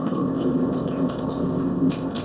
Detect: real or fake fake